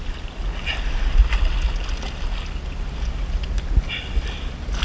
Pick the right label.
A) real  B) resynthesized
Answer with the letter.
A